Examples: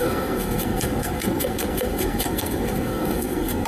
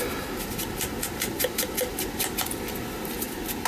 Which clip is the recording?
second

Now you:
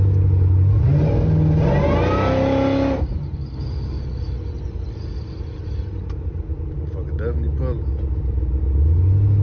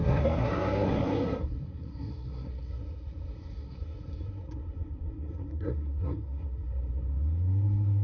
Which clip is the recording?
first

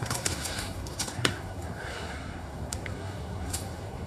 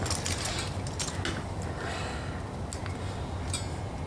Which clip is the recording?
second